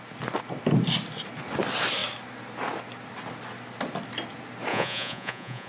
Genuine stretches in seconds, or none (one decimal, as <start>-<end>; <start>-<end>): 0.0-4.7

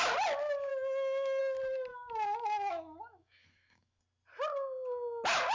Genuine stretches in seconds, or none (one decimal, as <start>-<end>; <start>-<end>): 0.0-0.7; 1.4-1.9; 4.0-5.5